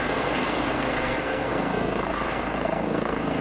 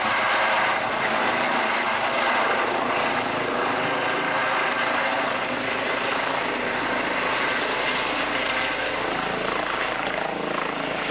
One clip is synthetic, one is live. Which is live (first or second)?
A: second